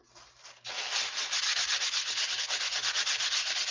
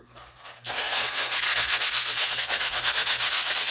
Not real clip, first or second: second